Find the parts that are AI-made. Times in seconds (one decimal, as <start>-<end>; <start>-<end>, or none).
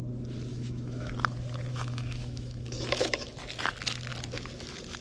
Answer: 0.5-1.1; 1.7-3.4